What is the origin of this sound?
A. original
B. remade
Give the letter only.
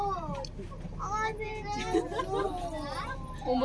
A